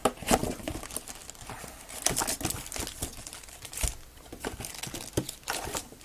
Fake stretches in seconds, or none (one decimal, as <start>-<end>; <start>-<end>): none